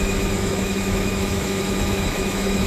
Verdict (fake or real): fake